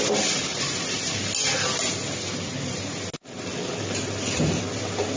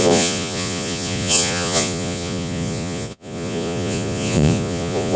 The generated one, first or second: second